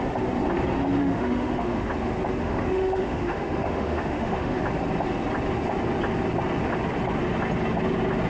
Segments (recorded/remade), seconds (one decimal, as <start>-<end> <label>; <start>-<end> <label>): 0.0-1.0 recorded; 1.0-1.9 remade; 1.9-2.4 recorded; 2.4-4.6 remade; 4.6-8.3 recorded